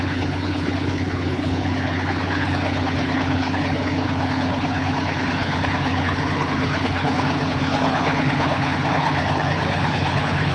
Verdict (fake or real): fake